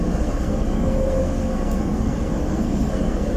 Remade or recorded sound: remade